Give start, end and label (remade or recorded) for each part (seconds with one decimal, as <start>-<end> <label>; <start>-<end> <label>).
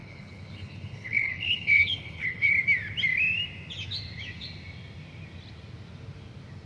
0.0-2.5 remade; 2.5-6.7 recorded